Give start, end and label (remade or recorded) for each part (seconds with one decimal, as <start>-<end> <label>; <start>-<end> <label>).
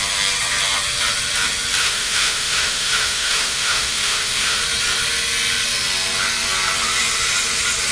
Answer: 0.0-1.8 recorded; 1.8-4.6 remade; 4.6-7.9 recorded